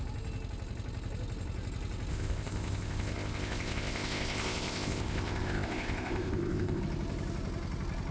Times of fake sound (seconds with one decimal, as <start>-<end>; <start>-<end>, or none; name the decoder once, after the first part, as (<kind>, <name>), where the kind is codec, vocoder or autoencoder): 2.1-6.8 (codec, ZipCodec)